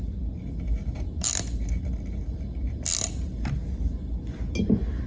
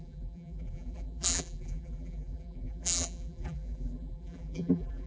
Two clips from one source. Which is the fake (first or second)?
second